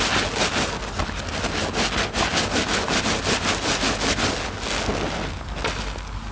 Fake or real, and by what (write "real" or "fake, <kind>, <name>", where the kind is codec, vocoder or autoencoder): real